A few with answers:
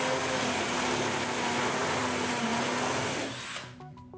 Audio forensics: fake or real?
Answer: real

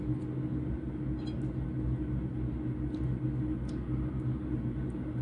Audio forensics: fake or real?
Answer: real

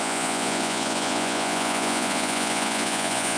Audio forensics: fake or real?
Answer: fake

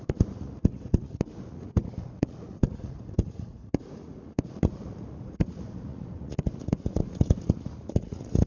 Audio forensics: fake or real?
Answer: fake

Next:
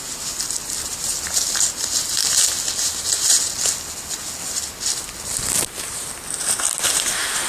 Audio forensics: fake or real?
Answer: real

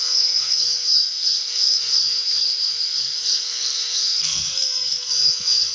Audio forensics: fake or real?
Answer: fake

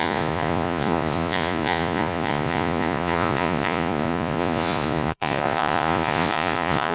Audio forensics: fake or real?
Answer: fake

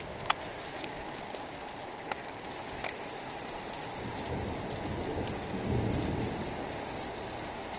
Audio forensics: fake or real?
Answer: real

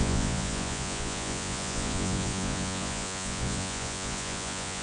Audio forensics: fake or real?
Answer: fake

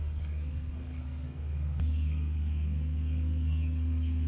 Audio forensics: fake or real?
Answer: fake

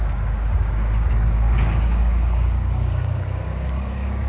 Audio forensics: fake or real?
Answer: fake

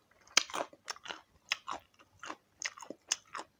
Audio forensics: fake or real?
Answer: real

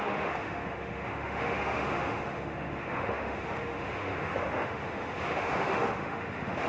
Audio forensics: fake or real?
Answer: fake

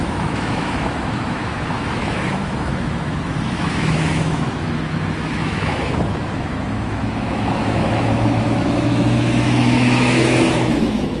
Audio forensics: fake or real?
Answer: fake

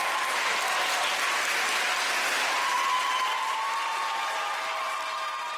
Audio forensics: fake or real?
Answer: real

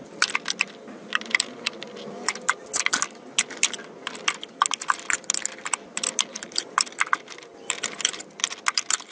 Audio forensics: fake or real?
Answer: real